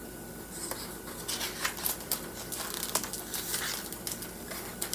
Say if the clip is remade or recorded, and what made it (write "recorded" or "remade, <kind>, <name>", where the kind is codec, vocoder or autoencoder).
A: recorded